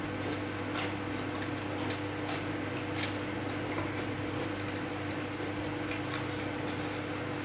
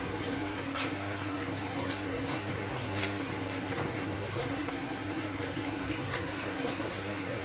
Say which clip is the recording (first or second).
first